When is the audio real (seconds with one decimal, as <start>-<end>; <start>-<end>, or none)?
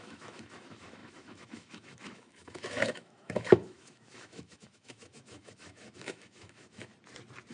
6.9-7.5